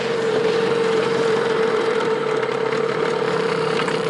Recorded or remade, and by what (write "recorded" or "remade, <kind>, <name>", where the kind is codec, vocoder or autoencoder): remade, vocoder, BigVGAN v2